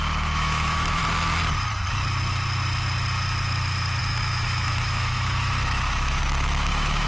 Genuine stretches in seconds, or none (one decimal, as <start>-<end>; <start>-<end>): 1.0-4.0

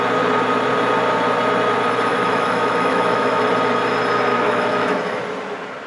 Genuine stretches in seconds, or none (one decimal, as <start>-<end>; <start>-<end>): 0.0-2.1; 3.4-4.3; 5.2-5.9

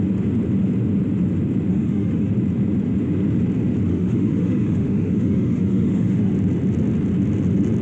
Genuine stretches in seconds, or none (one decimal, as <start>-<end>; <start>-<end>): 0.0-1.7; 2.3-3.9; 6.3-7.8

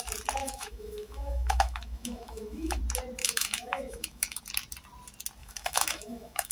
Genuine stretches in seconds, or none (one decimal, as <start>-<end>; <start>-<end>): 0.0-0.4; 2.8-3.2; 4.4-5.4

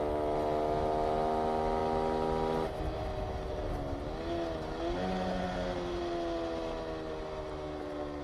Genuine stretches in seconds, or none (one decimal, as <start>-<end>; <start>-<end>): 0.0-8.2